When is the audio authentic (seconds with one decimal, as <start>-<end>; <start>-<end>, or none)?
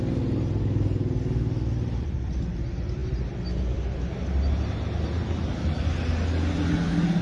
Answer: 0.0-7.2